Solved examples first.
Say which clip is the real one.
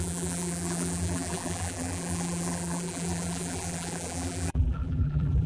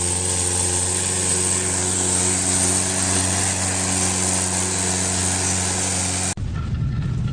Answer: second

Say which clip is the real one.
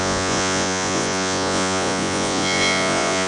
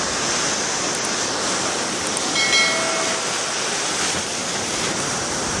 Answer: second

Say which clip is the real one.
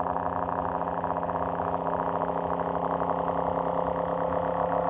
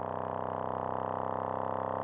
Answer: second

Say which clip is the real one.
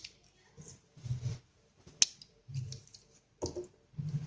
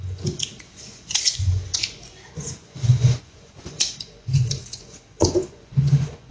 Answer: first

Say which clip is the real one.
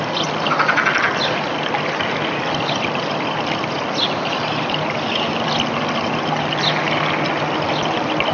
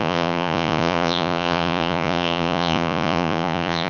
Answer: first